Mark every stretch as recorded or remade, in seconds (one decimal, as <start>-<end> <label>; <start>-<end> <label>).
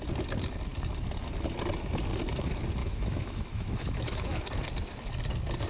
0.0-2.8 recorded; 2.8-4.4 remade; 4.4-5.7 recorded